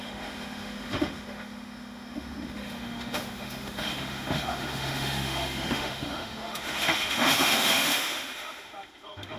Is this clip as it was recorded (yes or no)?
no